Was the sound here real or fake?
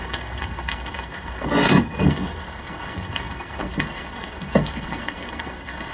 fake